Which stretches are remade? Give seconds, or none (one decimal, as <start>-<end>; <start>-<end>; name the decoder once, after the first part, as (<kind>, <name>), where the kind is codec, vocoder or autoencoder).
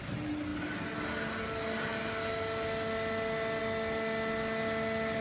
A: none